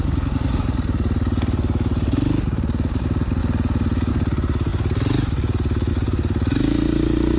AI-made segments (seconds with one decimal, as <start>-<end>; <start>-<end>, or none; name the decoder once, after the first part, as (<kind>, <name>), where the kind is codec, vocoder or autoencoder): none